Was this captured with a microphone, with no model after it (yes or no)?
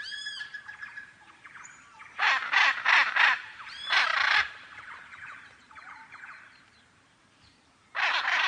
no